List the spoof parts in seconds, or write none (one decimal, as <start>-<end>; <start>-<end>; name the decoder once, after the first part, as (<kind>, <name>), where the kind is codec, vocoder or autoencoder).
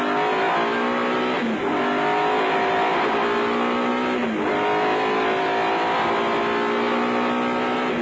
none